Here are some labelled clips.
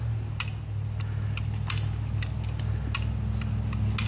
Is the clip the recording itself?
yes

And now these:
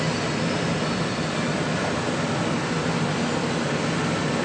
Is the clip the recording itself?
yes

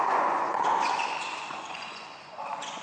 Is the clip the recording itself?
no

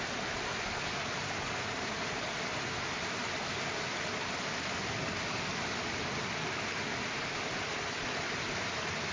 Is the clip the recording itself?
yes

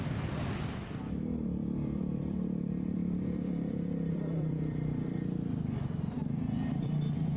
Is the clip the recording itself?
no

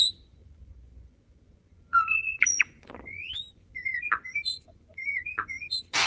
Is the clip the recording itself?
no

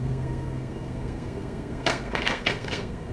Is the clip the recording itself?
no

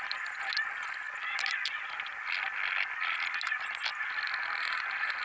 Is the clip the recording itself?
yes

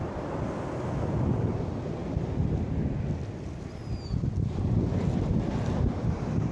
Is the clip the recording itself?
yes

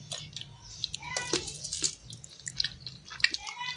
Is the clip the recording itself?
yes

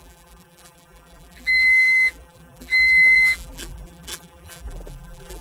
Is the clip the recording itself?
no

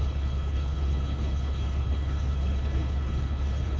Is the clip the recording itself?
no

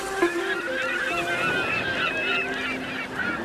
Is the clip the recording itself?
yes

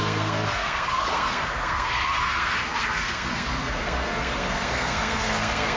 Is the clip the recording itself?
no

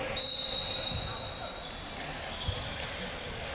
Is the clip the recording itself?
yes